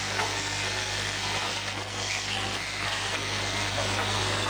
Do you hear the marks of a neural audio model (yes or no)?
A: yes